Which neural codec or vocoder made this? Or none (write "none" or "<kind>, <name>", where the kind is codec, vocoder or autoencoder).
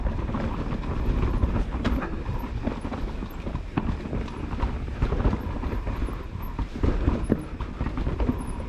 none